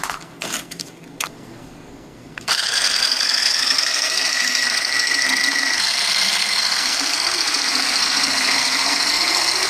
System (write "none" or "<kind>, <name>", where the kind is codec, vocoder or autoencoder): codec, SNAC